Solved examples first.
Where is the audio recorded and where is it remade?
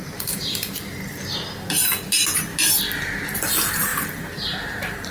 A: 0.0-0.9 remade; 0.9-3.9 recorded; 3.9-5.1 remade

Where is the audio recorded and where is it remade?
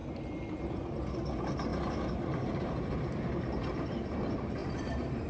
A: 0.0-1.7 recorded; 1.7-3.6 remade; 3.6-4.6 recorded; 4.6-5.3 remade